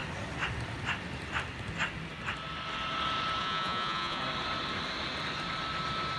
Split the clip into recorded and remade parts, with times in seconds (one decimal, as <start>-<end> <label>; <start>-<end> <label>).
0.0-3.4 recorded; 3.4-4.2 remade; 4.2-6.2 recorded